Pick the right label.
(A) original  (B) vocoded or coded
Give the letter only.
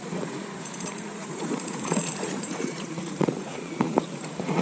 B